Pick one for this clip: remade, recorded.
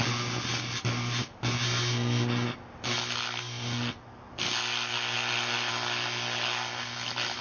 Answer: recorded